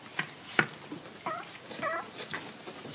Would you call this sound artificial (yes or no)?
no